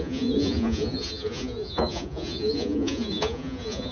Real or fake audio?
fake